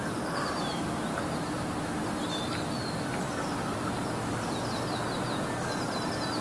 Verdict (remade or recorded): recorded